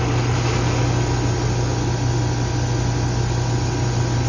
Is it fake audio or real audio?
real